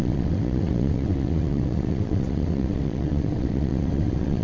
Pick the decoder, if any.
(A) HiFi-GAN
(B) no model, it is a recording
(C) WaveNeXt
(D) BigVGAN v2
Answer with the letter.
C